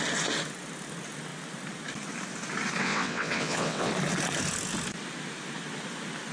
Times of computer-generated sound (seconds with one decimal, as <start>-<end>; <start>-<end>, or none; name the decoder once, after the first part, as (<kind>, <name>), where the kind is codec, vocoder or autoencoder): 2.8-3.9 (vocoder, WaveNeXt)